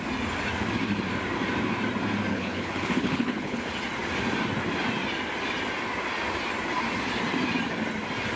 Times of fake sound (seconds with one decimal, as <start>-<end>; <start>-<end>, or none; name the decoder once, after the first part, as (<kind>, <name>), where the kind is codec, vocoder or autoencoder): 2.3-3.6 (codec, HILCodec)